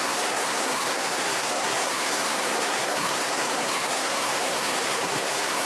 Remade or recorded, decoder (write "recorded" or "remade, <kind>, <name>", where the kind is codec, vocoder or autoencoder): remade, codec, SNAC